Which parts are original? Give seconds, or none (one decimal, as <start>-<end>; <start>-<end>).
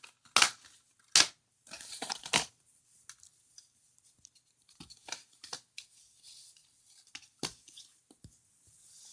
0.0-1.6; 2.5-9.1